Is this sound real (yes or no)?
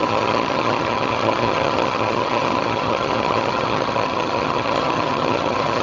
no